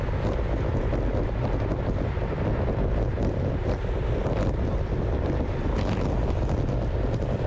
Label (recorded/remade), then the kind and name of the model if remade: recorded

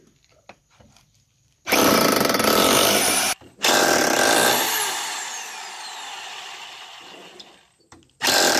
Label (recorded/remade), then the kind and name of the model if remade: remade, vocoder, BigVGAN v2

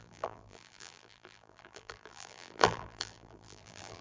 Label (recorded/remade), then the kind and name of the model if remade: remade, vocoder, BigVGAN v2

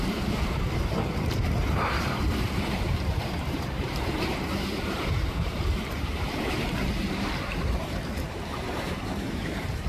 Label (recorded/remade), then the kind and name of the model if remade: remade, vocoder, BigVGAN v2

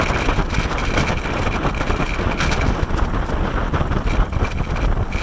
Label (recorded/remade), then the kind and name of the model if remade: recorded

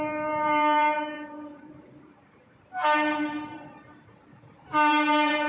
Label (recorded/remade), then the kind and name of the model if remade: remade, vocoder, BigVGAN v2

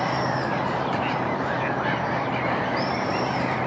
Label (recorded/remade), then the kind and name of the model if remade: remade, vocoder, BigVGAN v2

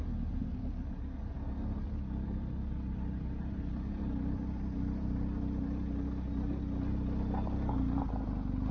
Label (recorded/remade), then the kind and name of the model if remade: recorded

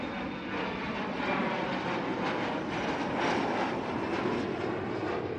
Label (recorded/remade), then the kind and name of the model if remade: recorded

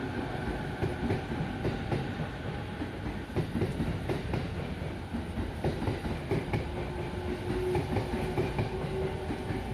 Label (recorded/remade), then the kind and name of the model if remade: recorded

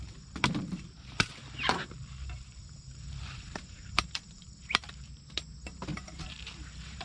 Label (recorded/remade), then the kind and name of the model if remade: remade, vocoder, BigVGAN v2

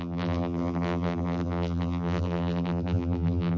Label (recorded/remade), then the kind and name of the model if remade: remade, vocoder, BigVGAN v2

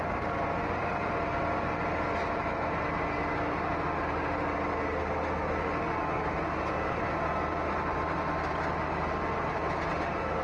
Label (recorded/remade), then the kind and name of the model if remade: recorded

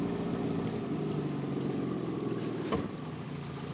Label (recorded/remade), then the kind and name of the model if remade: recorded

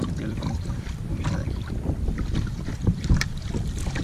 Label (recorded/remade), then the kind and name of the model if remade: remade, vocoder, BigVGAN v2